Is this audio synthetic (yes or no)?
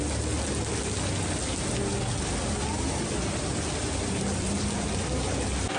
no